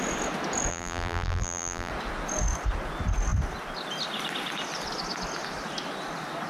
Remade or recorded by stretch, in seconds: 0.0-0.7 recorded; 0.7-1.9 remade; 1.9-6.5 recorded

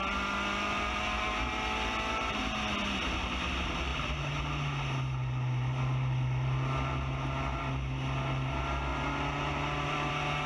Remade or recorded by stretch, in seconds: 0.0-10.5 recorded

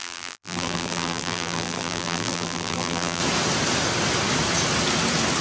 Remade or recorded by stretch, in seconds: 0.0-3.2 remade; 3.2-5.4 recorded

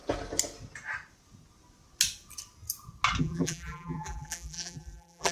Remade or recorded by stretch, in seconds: 0.0-3.2 recorded; 3.2-5.3 remade

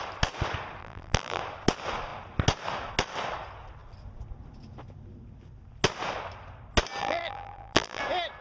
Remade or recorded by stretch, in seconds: 0.0-0.8 recorded; 0.8-1.4 remade; 1.4-7.0 recorded; 7.0-8.0 remade; 8.0-8.4 recorded

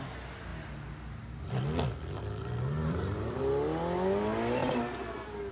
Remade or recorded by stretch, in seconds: 0.0-2.8 recorded; 2.8-3.4 remade; 3.4-5.5 recorded

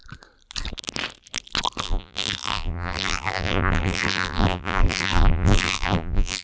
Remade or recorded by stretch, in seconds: 0.0-1.8 recorded; 1.8-6.4 remade

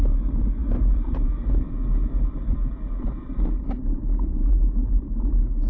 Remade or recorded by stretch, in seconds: 0.0-5.7 remade